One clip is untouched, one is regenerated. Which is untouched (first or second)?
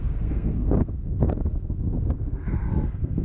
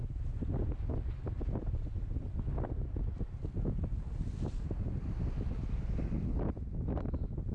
second